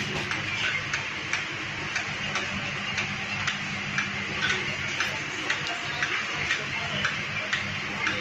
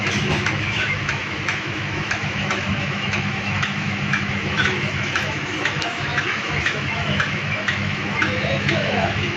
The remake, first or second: second